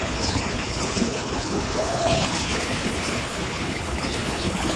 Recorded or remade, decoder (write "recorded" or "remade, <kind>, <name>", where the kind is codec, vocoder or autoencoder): remade, codec, HILCodec